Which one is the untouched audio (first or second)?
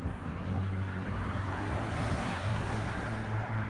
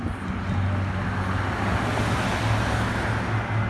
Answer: second